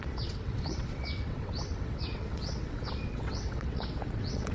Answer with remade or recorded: remade